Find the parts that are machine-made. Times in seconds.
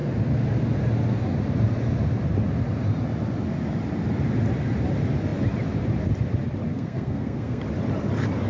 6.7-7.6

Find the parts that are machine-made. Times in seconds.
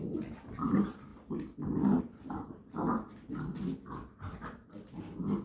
none